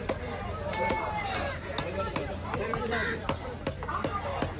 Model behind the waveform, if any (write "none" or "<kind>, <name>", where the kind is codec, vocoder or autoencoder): vocoder, BigVGAN v2